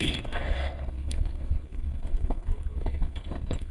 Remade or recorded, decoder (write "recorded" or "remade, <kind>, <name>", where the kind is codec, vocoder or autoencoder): remade, codec, SNAC